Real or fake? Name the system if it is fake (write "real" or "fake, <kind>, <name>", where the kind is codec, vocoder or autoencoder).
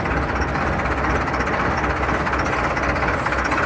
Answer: real